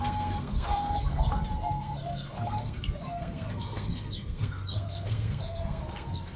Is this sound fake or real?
fake